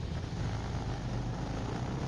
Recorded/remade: recorded